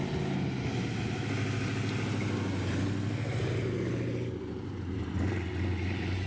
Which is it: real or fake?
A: real